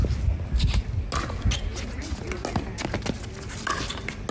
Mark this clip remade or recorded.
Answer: recorded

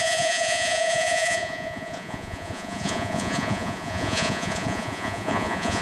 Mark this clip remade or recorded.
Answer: remade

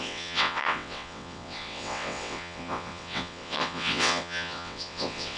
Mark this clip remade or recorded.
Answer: remade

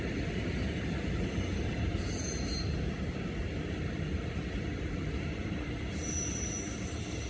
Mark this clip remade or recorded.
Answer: recorded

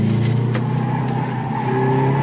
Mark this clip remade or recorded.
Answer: recorded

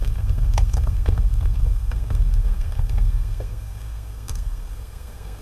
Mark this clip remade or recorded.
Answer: remade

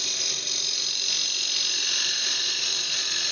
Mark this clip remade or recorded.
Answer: recorded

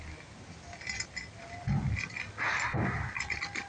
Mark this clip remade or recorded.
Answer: recorded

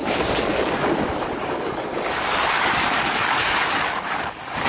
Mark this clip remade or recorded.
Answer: remade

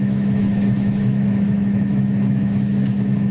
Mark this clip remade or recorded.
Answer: remade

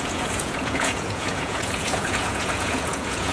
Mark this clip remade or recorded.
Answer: remade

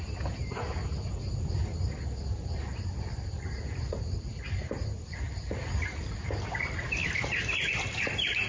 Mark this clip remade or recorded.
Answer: recorded